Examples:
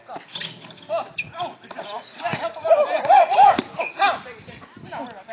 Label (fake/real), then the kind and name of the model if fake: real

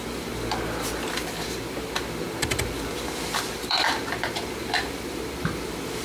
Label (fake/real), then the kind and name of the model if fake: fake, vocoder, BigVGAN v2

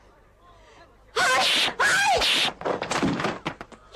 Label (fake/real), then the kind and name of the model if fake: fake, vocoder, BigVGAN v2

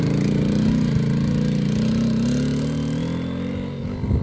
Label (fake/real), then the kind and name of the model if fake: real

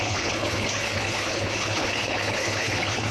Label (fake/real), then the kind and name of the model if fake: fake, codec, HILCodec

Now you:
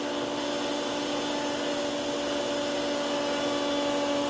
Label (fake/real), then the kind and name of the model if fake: real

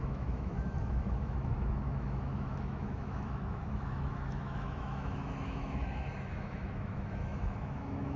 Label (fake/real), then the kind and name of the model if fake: fake, autoencoder, DAC-VAE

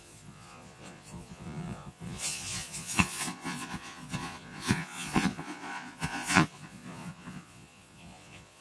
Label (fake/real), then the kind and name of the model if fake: fake, vocoder, Vocos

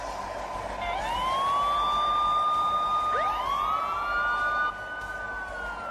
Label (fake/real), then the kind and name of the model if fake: real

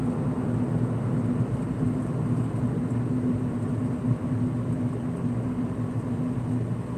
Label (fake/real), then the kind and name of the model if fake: real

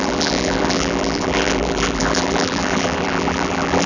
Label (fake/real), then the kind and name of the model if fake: fake, vocoder, BigVGAN v2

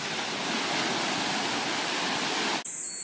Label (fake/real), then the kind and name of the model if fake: real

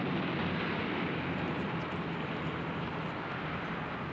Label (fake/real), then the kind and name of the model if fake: real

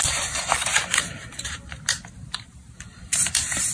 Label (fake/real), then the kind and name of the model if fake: real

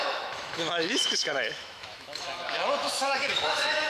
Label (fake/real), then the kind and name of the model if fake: fake, autoencoder, DAC-VAE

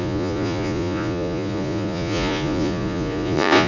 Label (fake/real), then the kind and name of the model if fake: fake, vocoder, Vocos